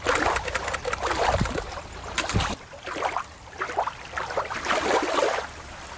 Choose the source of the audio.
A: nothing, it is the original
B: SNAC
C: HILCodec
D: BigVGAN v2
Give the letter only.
D